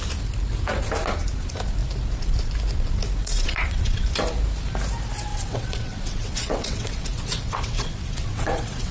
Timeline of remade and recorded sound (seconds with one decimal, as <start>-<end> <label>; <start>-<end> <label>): 0.0-3.2 recorded; 3.2-4.0 remade; 4.0-5.3 recorded; 5.3-8.9 remade